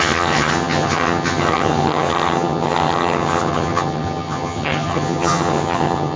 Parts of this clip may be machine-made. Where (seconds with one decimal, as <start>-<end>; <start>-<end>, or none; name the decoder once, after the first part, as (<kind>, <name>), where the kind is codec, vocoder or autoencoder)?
0.0-6.2 (vocoder, HiFi-GAN)